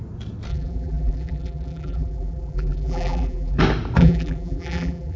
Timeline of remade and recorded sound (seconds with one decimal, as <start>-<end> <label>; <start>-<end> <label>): 0.0-0.5 recorded; 0.5-3.6 remade; 3.6-4.0 recorded; 4.0-5.2 remade